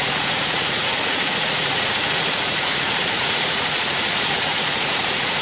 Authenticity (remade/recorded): remade